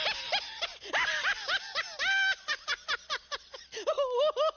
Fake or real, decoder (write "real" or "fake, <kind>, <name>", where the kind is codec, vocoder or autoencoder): real